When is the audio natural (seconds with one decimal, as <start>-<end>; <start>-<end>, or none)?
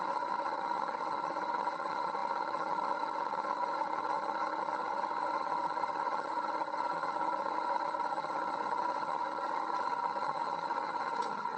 none